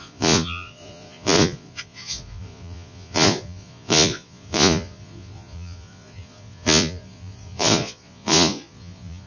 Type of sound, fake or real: fake